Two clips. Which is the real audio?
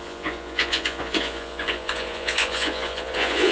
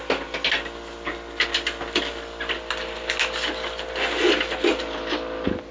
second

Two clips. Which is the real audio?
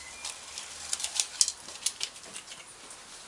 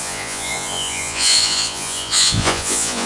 first